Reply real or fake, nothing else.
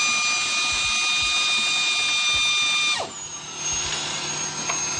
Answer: real